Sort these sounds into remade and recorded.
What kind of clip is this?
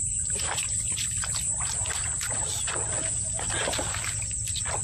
recorded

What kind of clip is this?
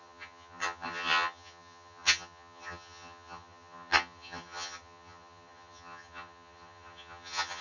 remade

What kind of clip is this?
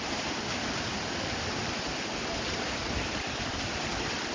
recorded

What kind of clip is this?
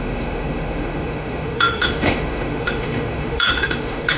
remade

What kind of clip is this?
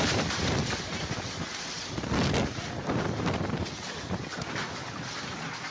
recorded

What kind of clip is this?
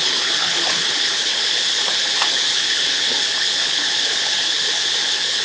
remade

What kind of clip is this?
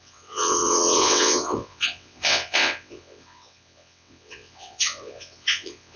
remade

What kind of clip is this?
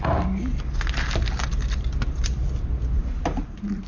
recorded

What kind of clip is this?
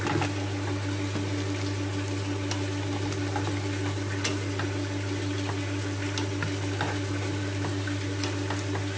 recorded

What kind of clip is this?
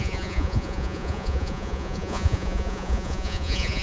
remade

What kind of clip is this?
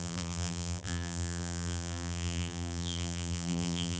remade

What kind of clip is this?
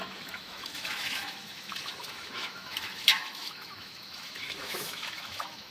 remade